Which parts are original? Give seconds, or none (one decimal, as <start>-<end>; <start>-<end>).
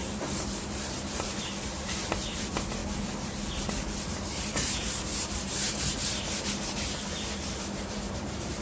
2.8-4.0